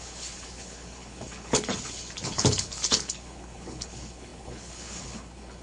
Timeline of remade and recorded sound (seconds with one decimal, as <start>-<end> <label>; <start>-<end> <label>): 0.0-5.6 remade